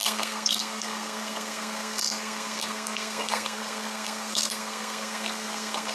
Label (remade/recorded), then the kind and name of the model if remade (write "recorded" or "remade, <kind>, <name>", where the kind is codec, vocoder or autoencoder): remade, codec, SNAC